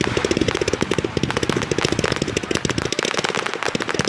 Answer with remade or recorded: recorded